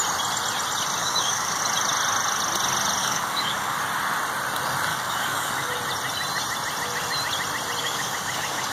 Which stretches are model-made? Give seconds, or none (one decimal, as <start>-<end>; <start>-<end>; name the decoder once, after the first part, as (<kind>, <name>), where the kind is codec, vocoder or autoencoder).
1.0-1.6 (codec, DAC); 3.0-3.8; 4.9-5.7; 7.8-8.7